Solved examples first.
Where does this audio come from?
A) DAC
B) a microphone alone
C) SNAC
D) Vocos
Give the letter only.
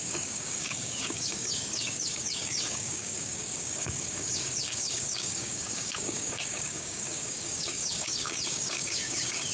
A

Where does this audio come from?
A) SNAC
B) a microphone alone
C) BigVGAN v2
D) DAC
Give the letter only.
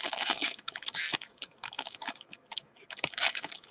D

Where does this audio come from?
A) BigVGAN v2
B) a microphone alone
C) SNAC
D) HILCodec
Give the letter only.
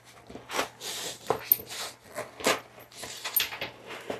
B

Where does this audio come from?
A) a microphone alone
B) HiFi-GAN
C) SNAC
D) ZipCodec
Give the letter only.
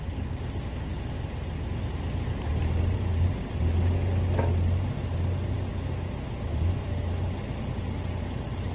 A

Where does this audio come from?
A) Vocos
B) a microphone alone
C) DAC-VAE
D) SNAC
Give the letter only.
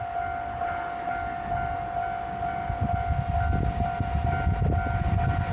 B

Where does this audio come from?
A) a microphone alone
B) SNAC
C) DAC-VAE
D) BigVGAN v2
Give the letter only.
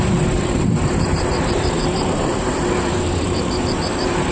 D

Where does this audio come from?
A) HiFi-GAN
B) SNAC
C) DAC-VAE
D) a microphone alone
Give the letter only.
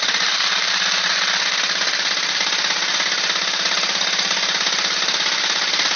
D